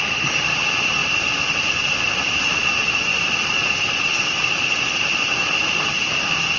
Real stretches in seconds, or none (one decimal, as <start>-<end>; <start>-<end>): 1.0-1.6; 3.1-3.7